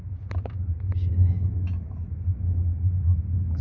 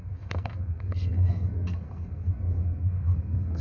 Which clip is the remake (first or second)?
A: second